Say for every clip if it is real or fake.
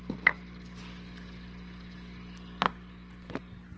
real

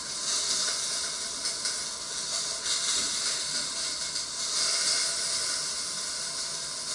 real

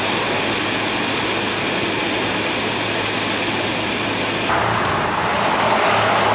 real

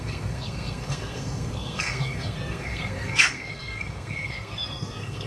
fake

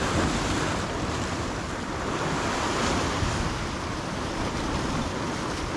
real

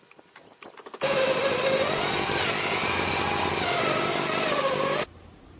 real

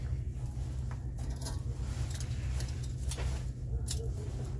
real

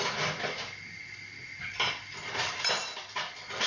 real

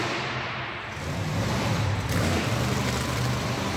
fake